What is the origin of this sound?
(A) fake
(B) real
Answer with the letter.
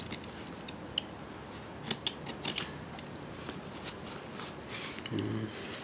B